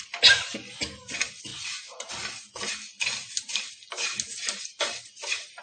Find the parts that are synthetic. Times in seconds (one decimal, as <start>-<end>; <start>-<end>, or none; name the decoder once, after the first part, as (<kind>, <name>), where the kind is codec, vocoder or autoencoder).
1.5-2.1 (vocoder, BigVGAN v2); 4.4-5.6